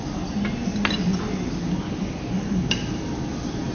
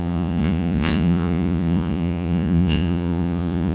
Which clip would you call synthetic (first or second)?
second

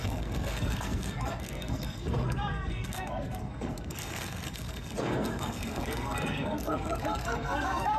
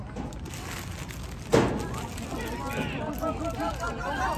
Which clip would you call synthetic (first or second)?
first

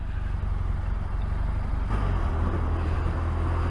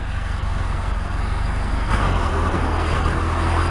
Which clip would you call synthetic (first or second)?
second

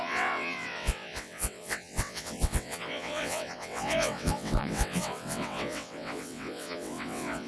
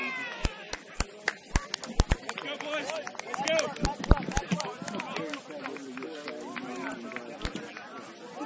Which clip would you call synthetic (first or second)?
first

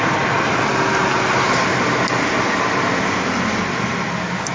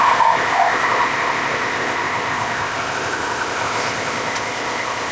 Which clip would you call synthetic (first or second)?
second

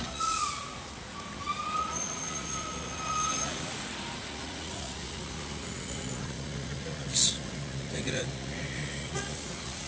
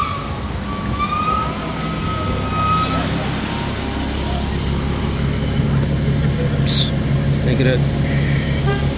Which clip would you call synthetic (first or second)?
first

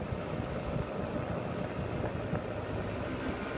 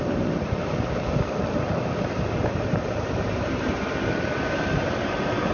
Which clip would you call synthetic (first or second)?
second